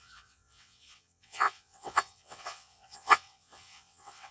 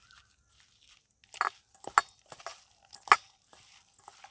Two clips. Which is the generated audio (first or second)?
first